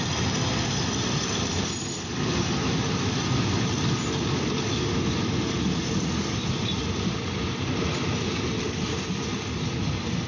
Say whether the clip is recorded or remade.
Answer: recorded